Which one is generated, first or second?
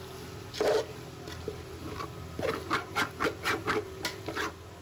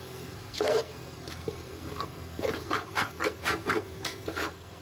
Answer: second